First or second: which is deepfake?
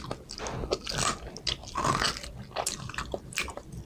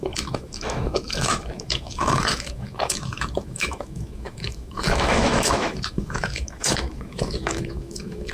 second